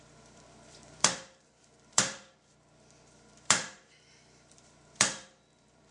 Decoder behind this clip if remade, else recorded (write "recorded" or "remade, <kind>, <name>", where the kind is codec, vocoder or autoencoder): remade, vocoder, BigVGAN v2